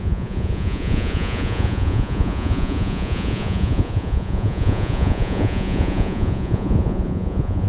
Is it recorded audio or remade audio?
remade